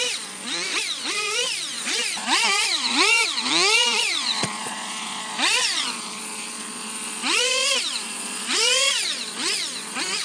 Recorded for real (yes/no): no